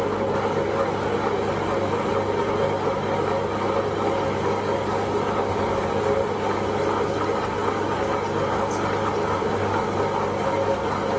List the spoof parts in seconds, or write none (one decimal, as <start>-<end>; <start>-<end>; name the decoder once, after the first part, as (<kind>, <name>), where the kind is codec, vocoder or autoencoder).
none